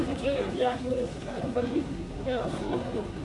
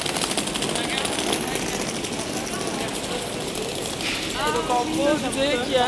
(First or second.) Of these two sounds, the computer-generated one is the first